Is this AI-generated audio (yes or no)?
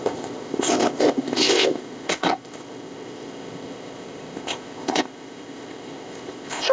yes